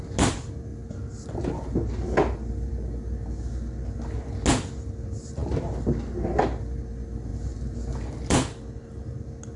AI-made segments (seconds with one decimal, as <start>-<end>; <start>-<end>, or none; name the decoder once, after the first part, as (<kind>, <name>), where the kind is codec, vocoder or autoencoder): none